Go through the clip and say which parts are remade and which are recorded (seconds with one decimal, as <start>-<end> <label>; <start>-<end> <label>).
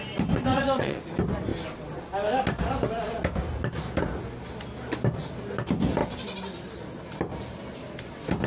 0.0-0.5 recorded; 0.5-1.0 remade; 1.0-8.5 recorded